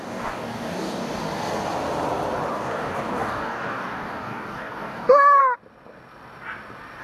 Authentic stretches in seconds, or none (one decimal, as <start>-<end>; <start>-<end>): 1.2-2.5; 5.4-7.0

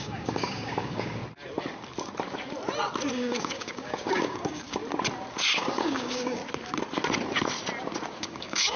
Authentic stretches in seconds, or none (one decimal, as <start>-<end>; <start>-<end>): 1.2-3.1; 4.8-5.5; 6.4-8.2

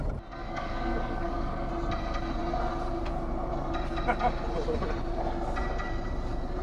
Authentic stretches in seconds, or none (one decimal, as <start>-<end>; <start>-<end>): 0.0-0.4; 1.7-6.6

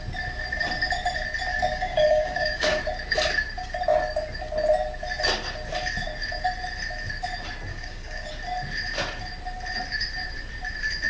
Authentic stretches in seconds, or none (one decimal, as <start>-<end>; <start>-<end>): 0.0-1.5; 2.8-7.7; 8.3-11.1

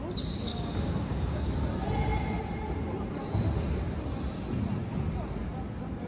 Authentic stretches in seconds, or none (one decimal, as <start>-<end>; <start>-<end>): 0.0-0.5; 1.5-6.1

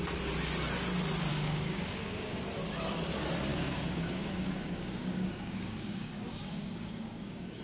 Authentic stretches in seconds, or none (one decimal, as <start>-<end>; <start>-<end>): 0.0-1.3; 2.4-3.5

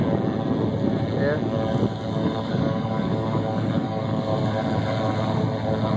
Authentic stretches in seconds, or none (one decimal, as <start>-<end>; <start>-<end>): 0.0-1.9; 4.3-6.0

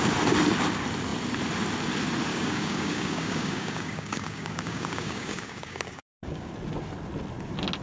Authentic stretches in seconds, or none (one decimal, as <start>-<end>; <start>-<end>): 0.0-2.3; 6.5-7.8